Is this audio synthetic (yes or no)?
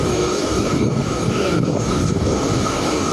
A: yes